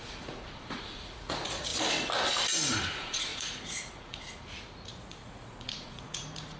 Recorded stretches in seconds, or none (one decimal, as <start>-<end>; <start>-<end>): 1.7-2.7